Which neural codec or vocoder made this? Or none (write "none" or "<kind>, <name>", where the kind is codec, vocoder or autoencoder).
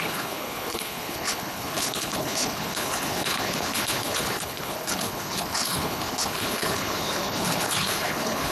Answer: codec, HILCodec